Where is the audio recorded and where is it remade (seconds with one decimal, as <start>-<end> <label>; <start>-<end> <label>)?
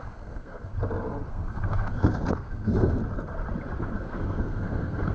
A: 0.0-0.7 remade; 0.7-1.3 recorded; 1.3-3.0 remade; 3.0-3.8 recorded; 3.8-5.1 remade